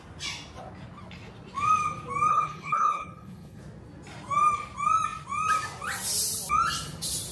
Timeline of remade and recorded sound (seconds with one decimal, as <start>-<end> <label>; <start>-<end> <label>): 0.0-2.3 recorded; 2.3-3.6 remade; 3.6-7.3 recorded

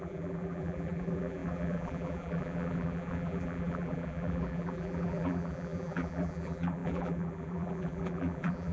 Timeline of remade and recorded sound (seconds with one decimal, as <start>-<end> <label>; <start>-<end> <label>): 0.0-8.7 remade

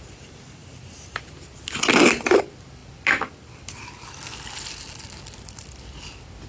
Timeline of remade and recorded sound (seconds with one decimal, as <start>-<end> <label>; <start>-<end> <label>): 0.0-6.5 recorded

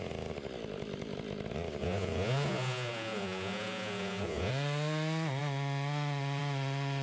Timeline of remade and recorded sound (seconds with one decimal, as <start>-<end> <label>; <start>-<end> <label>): 0.0-1.8 recorded; 1.8-4.5 remade; 4.5-7.0 recorded

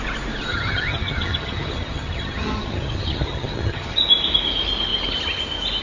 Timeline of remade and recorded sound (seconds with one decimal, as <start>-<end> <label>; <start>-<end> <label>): 0.0-0.5 recorded; 0.5-4.0 remade; 4.0-5.8 recorded

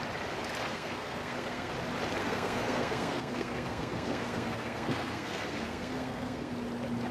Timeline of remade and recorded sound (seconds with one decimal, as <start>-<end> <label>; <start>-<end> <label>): 0.0-0.6 recorded; 0.6-1.7 remade; 1.7-2.2 recorded; 2.2-6.5 remade; 6.5-7.1 recorded